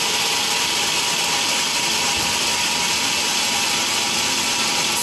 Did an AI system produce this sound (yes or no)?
no